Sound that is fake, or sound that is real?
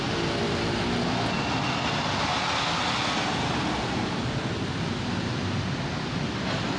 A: real